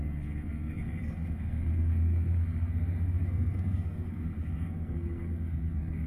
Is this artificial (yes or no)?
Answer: yes